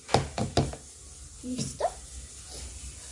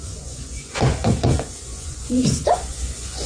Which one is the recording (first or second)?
first